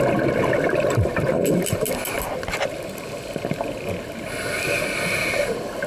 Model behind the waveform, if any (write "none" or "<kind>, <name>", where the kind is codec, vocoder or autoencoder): none